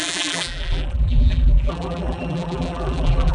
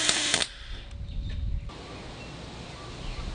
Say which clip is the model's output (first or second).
first